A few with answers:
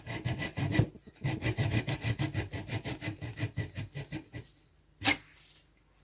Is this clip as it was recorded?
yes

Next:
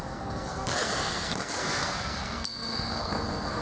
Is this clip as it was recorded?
no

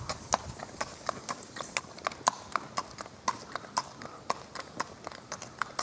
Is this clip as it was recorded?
yes